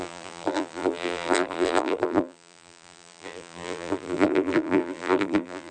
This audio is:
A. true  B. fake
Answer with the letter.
B